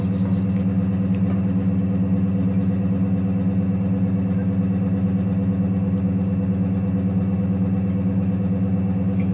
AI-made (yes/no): no